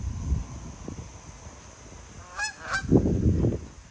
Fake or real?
real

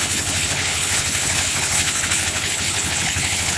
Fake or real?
fake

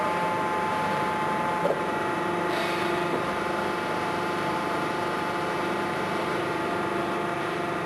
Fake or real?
fake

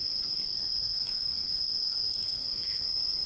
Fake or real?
fake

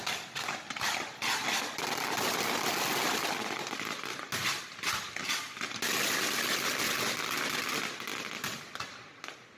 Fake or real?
real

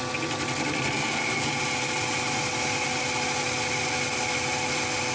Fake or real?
real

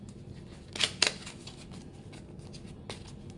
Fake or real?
real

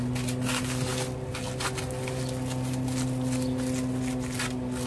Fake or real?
real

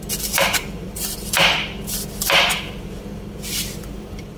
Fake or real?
real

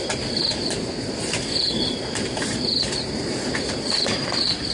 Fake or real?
fake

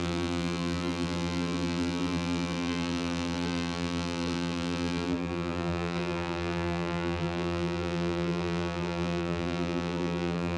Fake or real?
fake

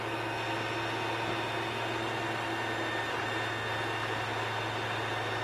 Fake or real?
real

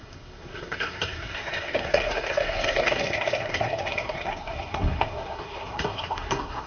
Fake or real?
fake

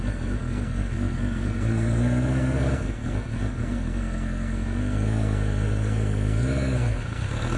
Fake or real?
fake